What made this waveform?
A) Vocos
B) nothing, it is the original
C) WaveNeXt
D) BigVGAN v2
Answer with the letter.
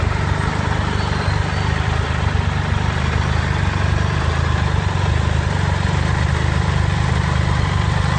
B